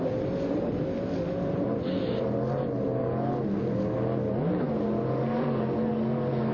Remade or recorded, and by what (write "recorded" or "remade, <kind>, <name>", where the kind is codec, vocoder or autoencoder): recorded